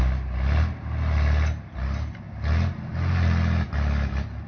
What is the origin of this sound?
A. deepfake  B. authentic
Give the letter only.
B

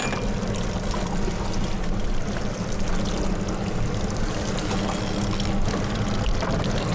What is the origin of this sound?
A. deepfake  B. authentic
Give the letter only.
B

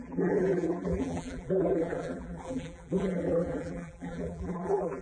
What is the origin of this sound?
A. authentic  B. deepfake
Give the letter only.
B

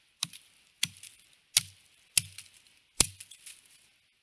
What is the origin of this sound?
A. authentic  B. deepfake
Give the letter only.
A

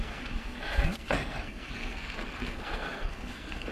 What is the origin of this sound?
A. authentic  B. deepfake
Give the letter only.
B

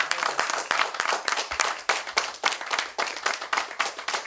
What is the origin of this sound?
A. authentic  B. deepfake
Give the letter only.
B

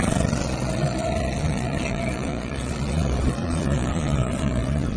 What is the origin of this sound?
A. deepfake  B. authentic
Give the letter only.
A